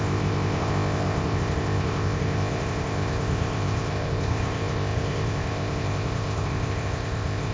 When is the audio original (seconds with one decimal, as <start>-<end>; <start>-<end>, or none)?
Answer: none